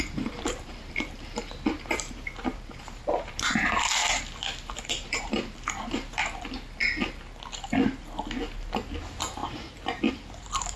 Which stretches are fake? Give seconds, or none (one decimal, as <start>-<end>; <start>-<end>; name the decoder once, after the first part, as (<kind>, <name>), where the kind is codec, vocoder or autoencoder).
0.0-4.0 (vocoder, BigVGAN v2); 4.9-6.2; 9.0-10.8